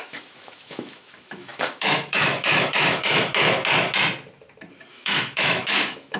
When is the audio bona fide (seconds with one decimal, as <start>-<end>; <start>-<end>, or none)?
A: 3.3-4.9